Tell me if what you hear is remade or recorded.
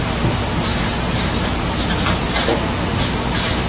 recorded